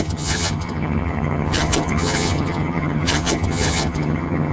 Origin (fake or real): fake